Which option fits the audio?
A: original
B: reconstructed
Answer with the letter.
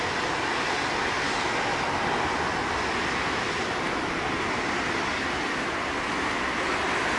A